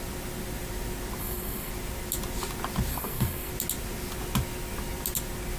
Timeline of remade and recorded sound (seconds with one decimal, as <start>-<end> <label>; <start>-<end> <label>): 0.0-1.2 recorded; 1.2-1.7 remade; 1.7-2.9 recorded; 2.9-3.5 remade; 3.5-5.6 recorded